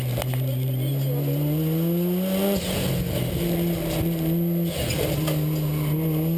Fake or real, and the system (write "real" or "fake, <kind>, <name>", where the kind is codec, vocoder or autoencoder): real